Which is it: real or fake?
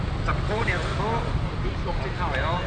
real